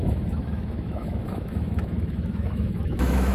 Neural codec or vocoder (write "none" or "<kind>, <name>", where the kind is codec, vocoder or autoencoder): autoencoder, DAC-VAE